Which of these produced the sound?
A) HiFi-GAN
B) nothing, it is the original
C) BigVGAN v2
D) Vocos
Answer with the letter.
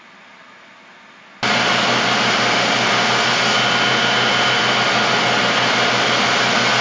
B